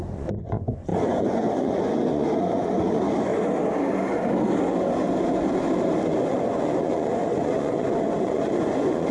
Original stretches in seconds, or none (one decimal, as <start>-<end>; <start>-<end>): 3.3-6.3